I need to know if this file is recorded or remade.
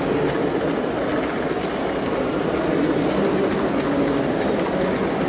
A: recorded